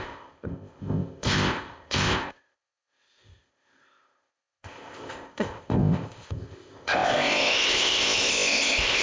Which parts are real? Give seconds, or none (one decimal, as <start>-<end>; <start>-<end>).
none